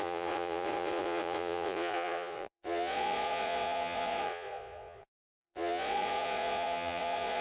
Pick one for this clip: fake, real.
fake